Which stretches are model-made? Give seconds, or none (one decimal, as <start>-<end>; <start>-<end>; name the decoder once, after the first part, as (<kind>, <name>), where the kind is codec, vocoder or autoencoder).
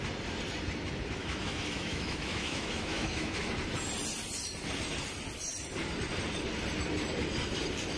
1.2-3.5 (autoencoder, DAC-VAE)